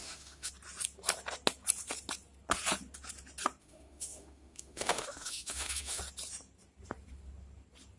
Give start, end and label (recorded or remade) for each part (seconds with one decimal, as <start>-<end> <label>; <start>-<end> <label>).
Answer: 0.0-0.5 remade; 0.5-3.6 recorded; 3.6-6.0 remade; 6.0-8.0 recorded